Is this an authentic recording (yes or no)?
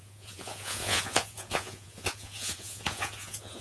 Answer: no